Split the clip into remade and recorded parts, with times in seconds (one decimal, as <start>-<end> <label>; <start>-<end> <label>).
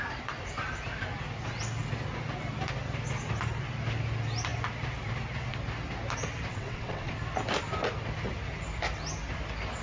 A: 0.0-6.5 recorded; 6.5-7.1 remade; 7.1-9.8 recorded